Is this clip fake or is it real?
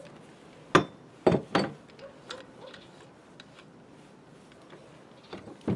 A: real